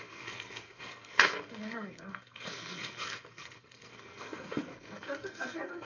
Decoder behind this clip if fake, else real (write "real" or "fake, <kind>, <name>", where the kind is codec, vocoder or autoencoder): fake, codec, SNAC